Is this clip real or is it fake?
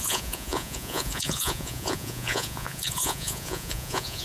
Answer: fake